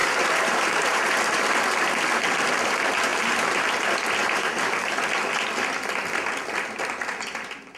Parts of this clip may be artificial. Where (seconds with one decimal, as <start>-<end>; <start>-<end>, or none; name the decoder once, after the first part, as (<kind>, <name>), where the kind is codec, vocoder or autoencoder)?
0.0-1.5 (vocoder, BigVGAN v2); 3.1-3.7; 4.2-4.9